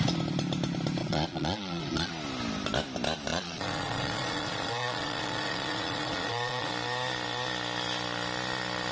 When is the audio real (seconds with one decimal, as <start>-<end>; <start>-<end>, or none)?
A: 0.0-1.0; 2.1-3.3; 6.7-8.9